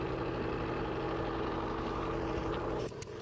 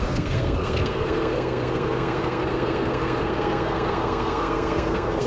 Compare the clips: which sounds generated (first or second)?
second